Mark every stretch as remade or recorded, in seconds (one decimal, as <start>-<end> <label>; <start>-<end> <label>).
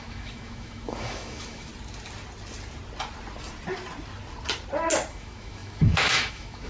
0.0-1.7 remade; 1.7-5.1 recorded; 5.1-6.7 remade